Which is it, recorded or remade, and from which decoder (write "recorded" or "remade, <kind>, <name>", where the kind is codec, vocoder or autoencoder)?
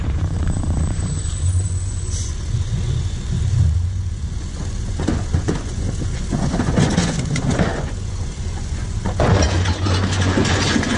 remade, vocoder, Vocos